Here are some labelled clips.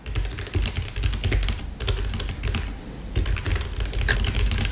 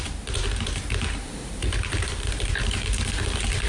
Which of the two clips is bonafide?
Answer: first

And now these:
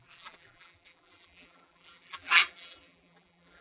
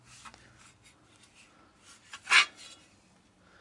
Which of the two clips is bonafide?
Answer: second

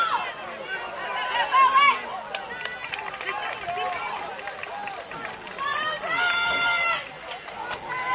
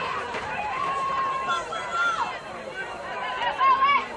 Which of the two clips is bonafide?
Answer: first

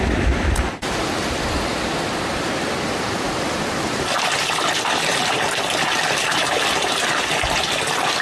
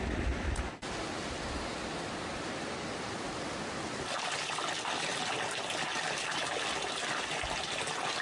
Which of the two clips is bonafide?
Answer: second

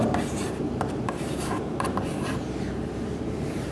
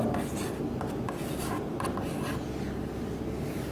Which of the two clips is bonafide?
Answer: second